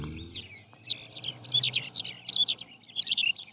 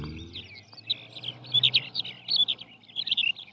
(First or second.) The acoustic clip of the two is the second